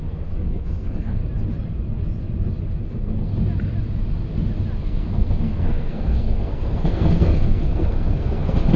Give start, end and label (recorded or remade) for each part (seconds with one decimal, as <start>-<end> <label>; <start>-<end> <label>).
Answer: 0.0-1.2 remade; 1.2-2.8 recorded; 2.8-3.3 remade; 3.3-4.8 recorded; 4.8-8.8 remade